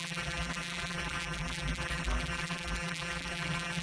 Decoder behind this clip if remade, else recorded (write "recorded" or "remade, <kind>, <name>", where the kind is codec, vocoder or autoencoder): remade, vocoder, BigVGAN v2